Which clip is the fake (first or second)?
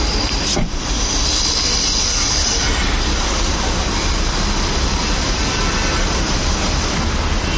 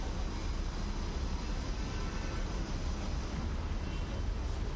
first